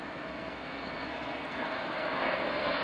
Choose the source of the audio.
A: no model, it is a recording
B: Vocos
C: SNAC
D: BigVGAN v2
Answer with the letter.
C